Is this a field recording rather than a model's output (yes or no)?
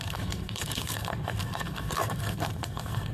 no